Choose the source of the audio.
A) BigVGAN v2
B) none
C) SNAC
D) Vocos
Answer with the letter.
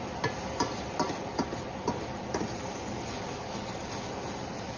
B